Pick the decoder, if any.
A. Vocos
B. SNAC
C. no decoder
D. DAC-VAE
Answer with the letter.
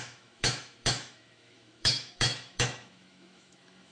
D